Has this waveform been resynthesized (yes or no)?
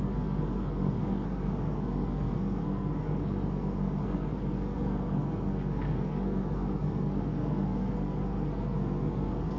yes